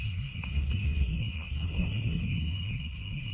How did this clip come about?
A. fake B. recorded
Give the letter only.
A